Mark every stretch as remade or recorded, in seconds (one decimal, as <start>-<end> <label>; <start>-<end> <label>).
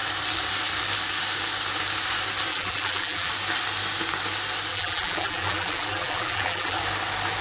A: 0.0-2.5 recorded; 2.5-3.3 remade; 3.3-4.7 recorded; 4.7-6.8 remade; 6.8-7.4 recorded